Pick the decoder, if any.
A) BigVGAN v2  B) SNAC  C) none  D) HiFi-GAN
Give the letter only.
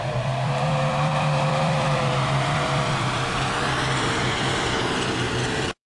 A